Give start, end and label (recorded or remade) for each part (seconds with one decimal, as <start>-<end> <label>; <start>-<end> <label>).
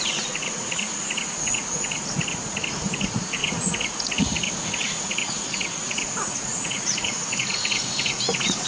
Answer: 0.0-8.7 remade